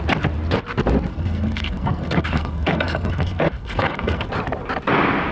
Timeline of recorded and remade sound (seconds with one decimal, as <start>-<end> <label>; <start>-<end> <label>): 0.0-1.1 recorded; 1.1-4.3 remade; 4.3-5.3 recorded